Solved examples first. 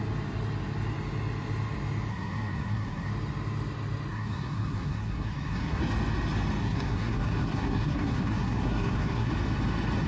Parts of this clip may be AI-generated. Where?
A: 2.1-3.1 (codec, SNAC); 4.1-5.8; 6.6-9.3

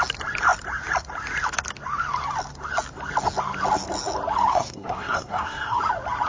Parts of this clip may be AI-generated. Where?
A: 4.5-5.8 (codec, SNAC)

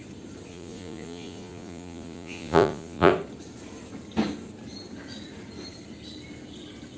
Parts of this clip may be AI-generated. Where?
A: 0.5-3.1 (vocoder, Vocos)

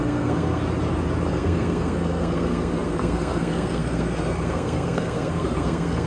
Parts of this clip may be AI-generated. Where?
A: 0.0-0.6 (codec, SNAC); 1.3-6.1

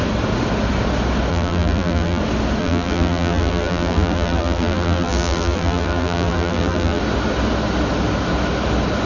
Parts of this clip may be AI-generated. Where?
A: 1.3-2.2 (vocoder, BigVGAN v2); 2.6-7.0

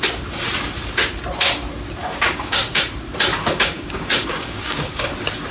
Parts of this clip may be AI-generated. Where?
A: 2.0-2.8 (codec, DAC); 3.3-5.1

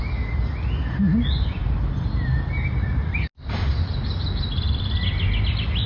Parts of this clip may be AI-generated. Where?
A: none